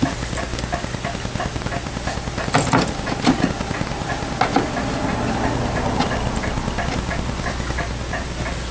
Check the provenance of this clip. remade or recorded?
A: recorded